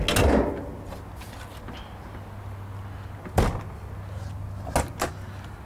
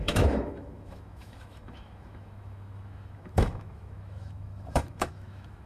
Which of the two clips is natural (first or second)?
first